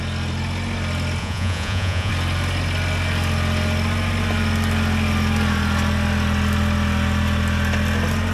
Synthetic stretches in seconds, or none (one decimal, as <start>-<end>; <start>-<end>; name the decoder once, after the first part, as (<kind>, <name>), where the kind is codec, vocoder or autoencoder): 1.2-2.1 (vocoder, Vocos)